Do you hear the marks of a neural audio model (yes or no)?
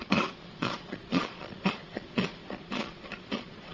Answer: yes